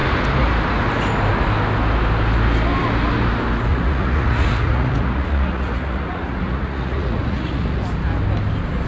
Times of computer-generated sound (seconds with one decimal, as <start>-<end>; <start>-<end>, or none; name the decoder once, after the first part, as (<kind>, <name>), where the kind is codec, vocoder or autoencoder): 3.7-7.8 (vocoder, Vocos)